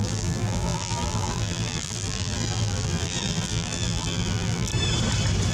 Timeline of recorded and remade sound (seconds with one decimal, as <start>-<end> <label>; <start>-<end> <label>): 0.0-4.7 remade; 4.7-5.5 recorded